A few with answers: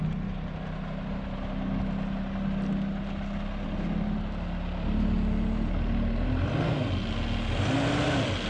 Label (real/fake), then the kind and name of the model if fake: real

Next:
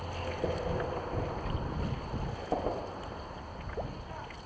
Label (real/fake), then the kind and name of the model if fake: real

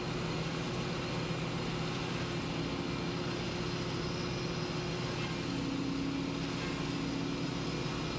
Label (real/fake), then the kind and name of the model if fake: real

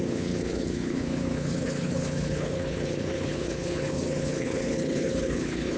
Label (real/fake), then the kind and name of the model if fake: fake, codec, HILCodec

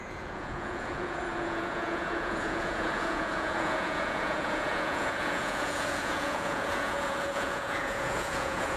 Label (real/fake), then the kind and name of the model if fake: fake, vocoder, Vocos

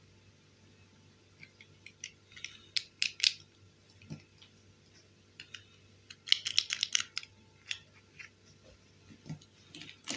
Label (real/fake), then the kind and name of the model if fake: real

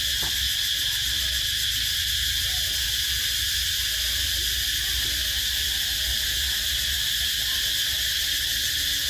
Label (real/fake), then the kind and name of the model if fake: real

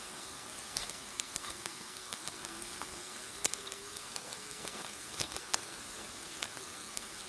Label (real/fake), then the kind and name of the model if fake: fake, codec, SNAC